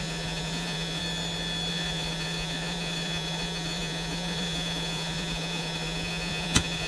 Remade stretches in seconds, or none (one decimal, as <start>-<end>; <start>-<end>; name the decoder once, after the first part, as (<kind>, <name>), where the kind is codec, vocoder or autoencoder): 0.0-1.0 (vocoder, Vocos); 1.7-6.9